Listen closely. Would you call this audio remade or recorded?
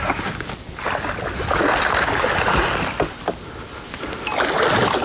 recorded